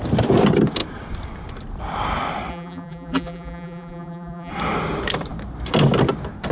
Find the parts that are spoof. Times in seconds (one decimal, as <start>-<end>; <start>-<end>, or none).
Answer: 2.5-4.5